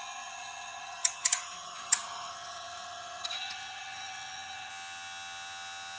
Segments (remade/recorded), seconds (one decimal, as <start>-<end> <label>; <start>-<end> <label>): 0.0-4.7 remade; 4.7-6.0 recorded